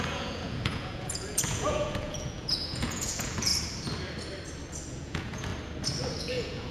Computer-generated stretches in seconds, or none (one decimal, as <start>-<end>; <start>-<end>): 0.0-3.5; 4.9-5.5; 6.2-6.7